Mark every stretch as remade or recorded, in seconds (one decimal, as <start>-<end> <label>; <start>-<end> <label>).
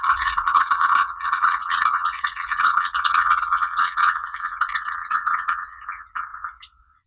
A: 0.0-7.1 remade